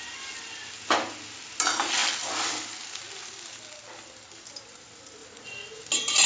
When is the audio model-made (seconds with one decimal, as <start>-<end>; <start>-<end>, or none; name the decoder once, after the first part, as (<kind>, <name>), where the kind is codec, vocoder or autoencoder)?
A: none